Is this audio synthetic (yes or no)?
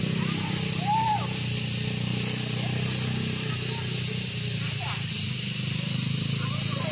no